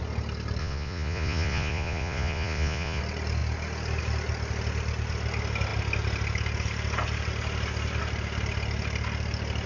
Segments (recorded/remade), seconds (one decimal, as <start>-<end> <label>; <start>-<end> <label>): 0.0-0.6 recorded; 0.6-3.0 remade; 3.0-9.7 recorded

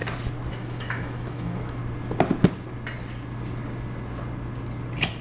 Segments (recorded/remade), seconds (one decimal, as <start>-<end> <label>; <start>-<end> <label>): 0.0-0.5 recorded; 0.5-1.8 remade; 1.8-5.2 recorded

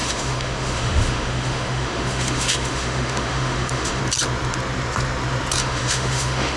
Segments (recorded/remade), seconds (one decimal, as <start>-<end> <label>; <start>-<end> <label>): 0.0-4.0 remade; 4.0-5.6 recorded; 5.6-6.6 remade

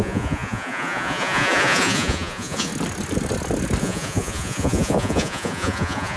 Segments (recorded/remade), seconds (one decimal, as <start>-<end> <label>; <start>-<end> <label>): 0.0-2.7 remade; 2.7-3.8 recorded; 3.8-6.2 remade

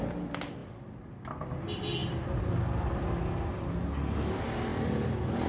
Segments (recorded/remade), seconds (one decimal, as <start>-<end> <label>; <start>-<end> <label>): 0.0-5.5 recorded

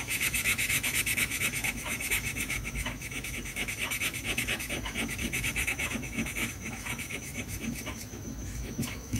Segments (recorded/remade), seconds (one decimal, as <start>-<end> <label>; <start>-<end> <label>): 0.0-9.2 remade